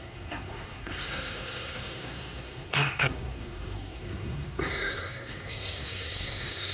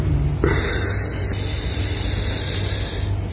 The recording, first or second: second